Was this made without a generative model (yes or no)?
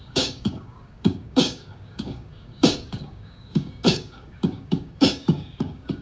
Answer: no